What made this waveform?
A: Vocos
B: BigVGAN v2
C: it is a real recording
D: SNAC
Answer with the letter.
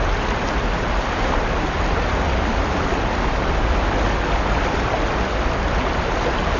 C